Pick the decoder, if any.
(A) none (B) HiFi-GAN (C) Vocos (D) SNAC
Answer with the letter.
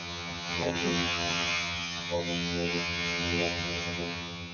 B